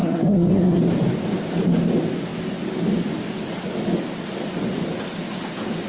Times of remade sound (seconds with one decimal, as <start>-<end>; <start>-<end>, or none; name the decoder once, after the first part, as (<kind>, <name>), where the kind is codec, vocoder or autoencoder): 0.0-0.8 (codec, SNAC)